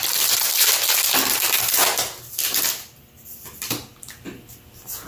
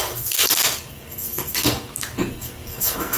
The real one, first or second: first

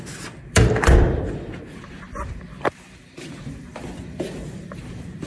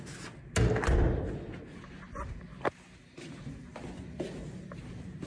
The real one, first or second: second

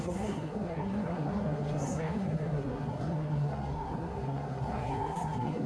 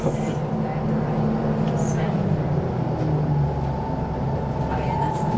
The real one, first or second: second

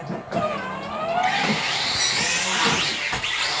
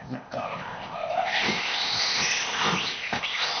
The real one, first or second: first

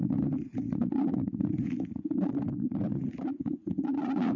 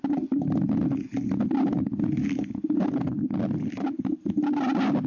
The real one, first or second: second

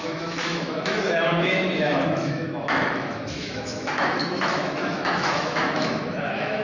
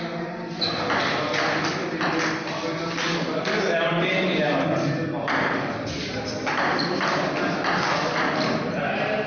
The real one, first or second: second